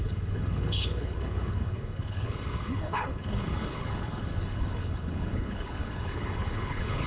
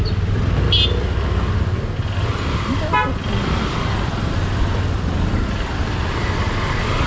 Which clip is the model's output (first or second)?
first